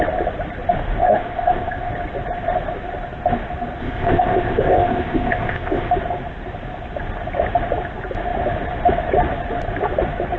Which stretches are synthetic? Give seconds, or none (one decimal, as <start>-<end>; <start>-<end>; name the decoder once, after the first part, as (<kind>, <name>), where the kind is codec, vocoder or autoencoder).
1.0-1.9 (codec, ZipCodec); 3.8-5.9